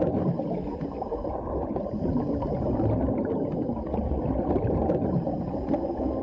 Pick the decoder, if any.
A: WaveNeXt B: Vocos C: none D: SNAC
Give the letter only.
C